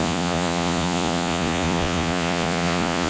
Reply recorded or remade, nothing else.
remade